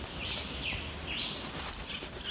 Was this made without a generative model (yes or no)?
yes